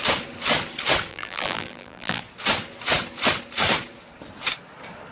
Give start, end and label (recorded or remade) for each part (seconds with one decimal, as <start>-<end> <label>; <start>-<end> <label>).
0.0-1.1 recorded; 1.1-2.2 remade; 2.2-5.1 recorded